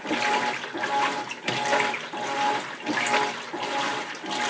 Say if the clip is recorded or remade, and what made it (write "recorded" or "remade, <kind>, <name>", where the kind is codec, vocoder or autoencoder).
recorded